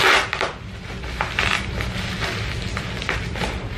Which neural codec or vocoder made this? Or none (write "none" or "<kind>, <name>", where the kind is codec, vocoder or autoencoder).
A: none